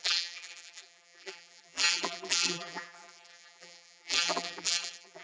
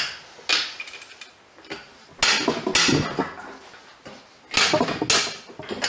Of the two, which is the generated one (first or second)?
first